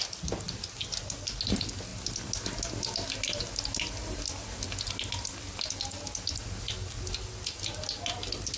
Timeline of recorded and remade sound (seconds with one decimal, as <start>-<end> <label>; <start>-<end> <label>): 0.0-8.6 recorded